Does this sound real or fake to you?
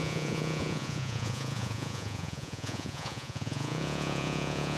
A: fake